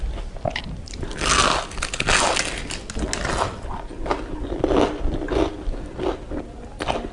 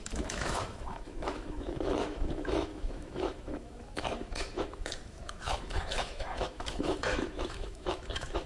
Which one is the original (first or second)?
first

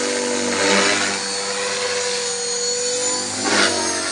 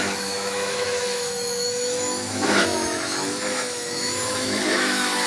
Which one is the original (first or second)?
first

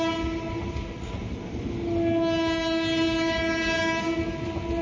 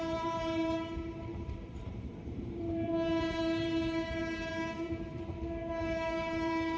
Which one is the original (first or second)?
first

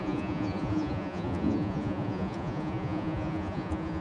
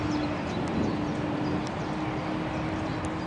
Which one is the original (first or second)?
second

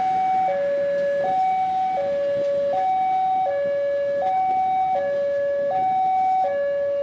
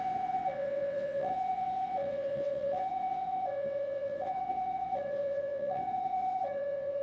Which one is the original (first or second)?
first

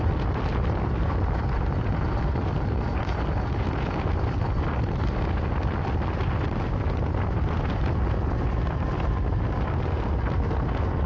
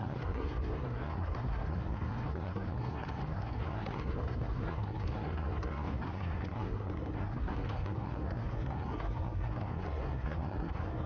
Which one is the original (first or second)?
first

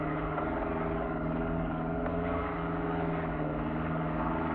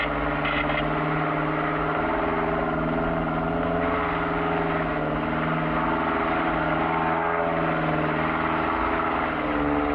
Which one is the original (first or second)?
second